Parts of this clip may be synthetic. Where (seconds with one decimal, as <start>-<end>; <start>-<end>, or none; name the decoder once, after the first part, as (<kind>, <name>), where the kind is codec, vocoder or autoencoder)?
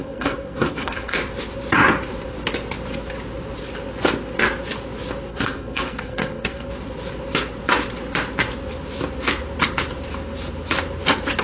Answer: 0.0-1.2 (codec, SNAC); 5.3-6.7